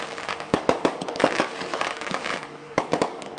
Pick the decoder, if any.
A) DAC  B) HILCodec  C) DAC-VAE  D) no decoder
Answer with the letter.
A